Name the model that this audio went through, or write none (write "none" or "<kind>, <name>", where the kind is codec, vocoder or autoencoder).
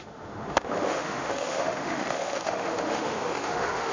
autoencoder, DAC-VAE